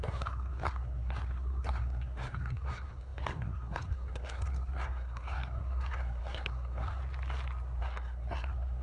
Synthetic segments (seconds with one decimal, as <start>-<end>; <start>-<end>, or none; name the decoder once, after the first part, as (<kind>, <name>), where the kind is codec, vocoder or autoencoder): 0.0-7.0 (codec, SNAC); 7.8-8.8